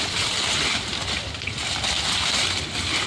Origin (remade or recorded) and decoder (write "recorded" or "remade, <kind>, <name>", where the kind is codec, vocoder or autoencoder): recorded